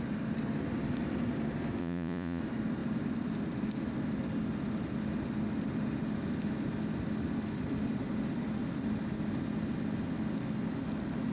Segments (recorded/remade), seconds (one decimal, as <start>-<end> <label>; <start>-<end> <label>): 0.0-1.8 recorded; 1.8-2.4 remade; 2.4-11.3 recorded